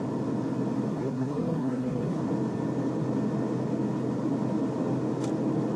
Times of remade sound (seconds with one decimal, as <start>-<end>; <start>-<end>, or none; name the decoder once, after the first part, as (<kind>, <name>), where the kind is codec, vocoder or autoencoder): 0.9-2.2 (codec, SNAC)